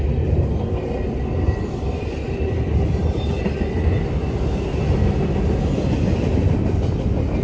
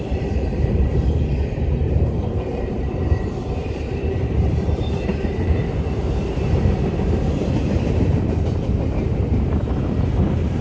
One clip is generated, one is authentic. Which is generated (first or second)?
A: second